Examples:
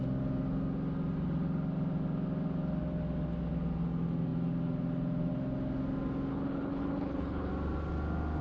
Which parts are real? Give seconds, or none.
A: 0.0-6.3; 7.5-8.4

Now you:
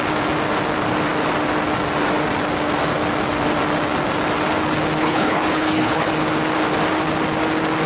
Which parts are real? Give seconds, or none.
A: 0.0-5.0; 6.1-7.9

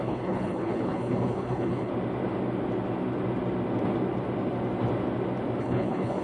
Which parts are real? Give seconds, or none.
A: 1.9-5.6

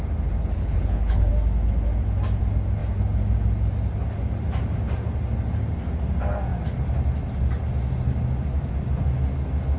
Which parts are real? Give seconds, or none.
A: 0.0-0.4; 1.3-9.8